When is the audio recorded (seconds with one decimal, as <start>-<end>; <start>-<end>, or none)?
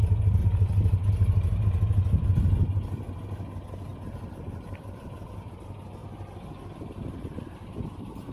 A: 0.0-0.4; 1.1-3.9; 5.5-8.3